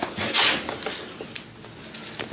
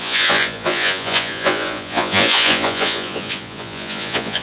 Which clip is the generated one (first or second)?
second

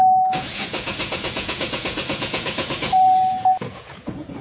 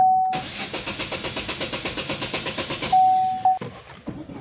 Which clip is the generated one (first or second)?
first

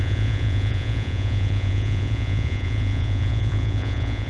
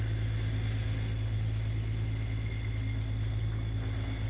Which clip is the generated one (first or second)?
first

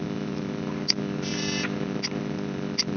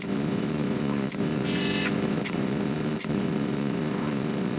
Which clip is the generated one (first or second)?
second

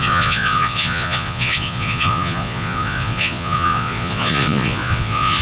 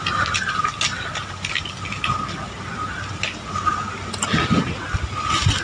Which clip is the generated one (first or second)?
first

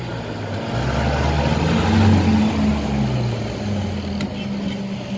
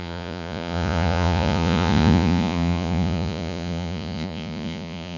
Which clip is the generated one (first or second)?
second